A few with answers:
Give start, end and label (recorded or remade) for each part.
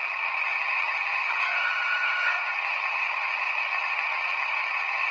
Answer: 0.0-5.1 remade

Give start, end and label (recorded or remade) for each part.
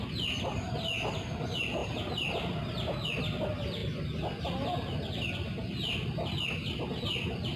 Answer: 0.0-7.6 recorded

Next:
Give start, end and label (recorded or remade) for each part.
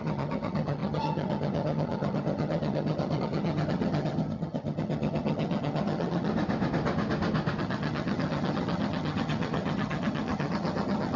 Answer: 0.0-6.3 remade; 6.3-7.6 recorded; 7.6-11.2 remade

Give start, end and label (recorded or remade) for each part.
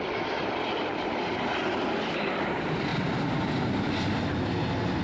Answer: 0.0-5.0 recorded